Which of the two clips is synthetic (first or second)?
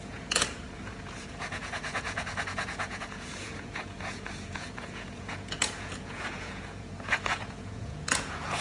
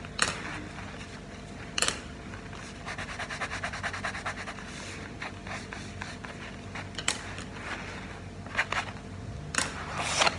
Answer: first